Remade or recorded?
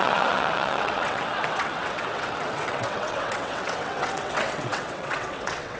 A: remade